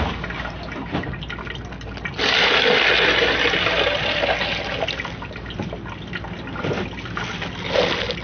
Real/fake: real